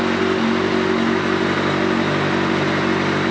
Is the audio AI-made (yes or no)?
no